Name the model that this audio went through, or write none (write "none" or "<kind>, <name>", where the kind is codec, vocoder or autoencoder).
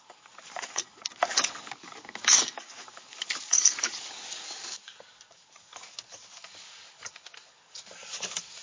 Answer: codec, DAC